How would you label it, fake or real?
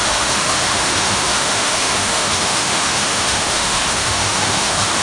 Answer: fake